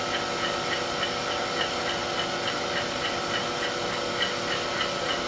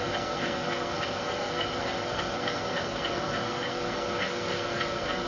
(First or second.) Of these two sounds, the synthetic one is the second